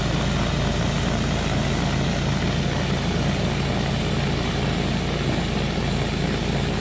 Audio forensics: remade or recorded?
recorded